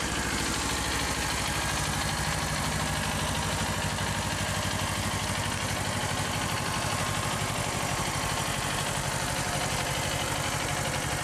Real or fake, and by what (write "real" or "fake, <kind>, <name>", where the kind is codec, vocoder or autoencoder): real